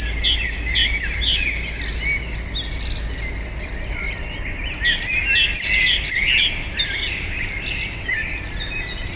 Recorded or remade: recorded